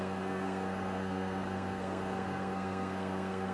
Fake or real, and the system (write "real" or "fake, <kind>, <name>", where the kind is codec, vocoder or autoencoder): fake, codec, SNAC